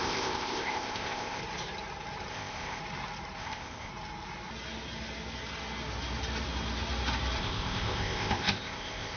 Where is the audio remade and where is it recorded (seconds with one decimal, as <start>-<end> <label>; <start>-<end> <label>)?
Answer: 0.0-1.4 remade; 1.4-2.3 recorded; 2.3-2.8 remade; 2.8-3.4 recorded; 3.4-3.9 remade; 3.9-7.4 recorded; 7.4-9.2 remade

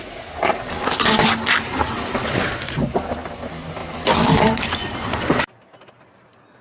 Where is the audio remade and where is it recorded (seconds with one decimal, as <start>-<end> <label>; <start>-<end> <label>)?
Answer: 0.0-6.6 recorded

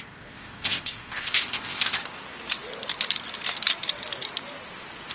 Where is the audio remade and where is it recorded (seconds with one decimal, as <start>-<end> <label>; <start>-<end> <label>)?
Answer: 0.0-2.0 remade; 2.0-5.1 recorded